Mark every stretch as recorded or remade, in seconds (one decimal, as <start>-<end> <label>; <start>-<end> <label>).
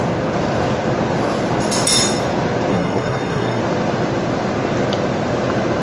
0.0-2.7 recorded; 2.7-3.6 remade; 3.6-5.8 recorded